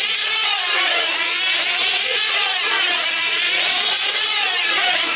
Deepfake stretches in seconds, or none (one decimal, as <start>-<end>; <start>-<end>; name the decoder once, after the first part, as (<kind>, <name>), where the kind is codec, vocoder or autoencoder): 0.4-1.3 (vocoder, Vocos); 1.8-5.2